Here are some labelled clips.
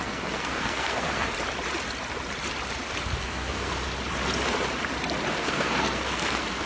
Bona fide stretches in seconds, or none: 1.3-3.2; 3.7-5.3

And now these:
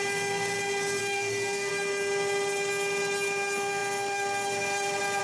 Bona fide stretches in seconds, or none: 0.0-1.0; 1.7-5.2

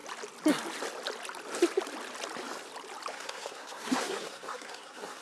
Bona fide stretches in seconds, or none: 0.0-3.1

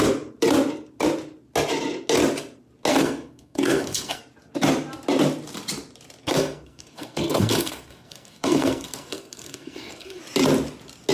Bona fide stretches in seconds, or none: 0.0-2.9; 4.2-6.2; 10.2-11.1

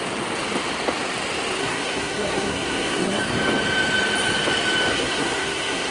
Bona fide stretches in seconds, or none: 0.0-1.6; 3.3-4.9

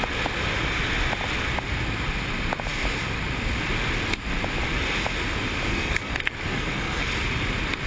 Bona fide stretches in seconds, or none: 0.0-5.7; 7.0-7.9

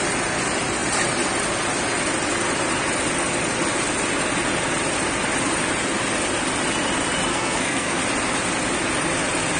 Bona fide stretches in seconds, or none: 0.0-7.3; 8.0-9.6